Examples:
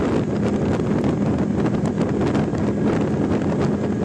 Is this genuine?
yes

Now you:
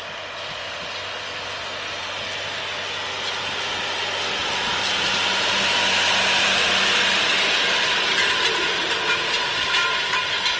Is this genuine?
yes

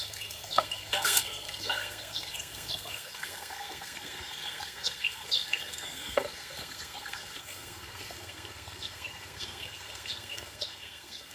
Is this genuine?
no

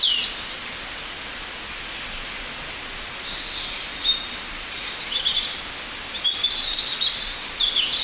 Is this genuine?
yes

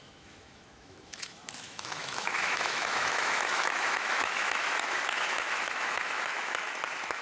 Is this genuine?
no